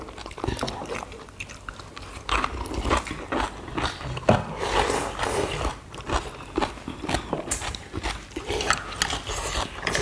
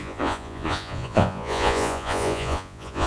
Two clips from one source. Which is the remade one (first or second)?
second